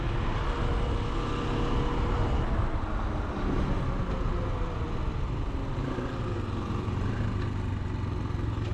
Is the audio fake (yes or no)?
no